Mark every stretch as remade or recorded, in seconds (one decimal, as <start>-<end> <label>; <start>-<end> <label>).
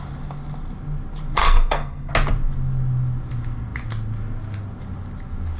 0.0-1.4 recorded; 1.4-2.1 remade; 2.1-5.6 recorded